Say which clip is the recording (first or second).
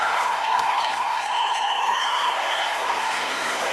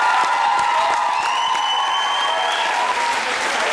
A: second